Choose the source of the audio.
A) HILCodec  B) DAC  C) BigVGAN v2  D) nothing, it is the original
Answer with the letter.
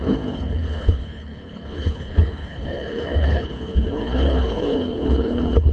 A